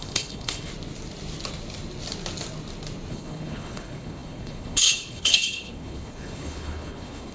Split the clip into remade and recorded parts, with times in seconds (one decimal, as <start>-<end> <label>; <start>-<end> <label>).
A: 0.0-0.7 remade; 0.7-3.1 recorded; 3.1-7.3 remade

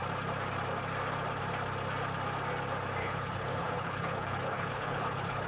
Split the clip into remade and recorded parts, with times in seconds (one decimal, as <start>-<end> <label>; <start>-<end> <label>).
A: 0.0-3.0 recorded; 3.0-5.5 remade